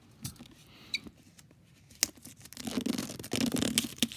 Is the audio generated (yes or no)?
no